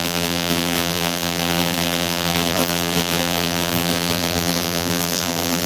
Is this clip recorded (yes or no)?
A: no